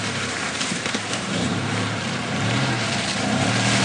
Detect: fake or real fake